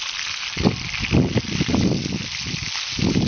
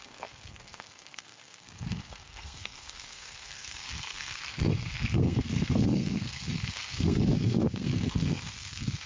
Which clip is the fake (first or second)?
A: second